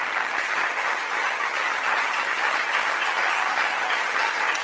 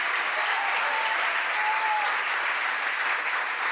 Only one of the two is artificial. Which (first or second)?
first